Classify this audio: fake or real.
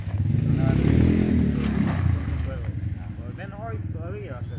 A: real